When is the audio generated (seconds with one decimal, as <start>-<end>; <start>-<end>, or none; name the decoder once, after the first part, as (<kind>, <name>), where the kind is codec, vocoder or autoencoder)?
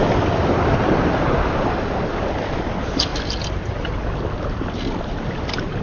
none